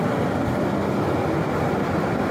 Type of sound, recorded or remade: recorded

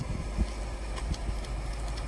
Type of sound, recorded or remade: recorded